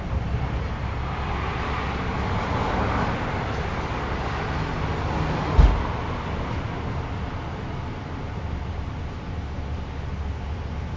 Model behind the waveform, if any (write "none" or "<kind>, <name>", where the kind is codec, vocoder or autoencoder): none